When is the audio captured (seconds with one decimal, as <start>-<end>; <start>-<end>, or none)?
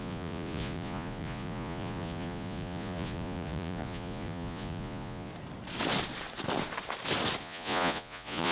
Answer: 5.3-7.4